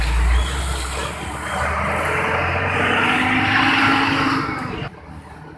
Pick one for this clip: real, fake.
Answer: real